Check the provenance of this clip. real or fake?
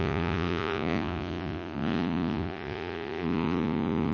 fake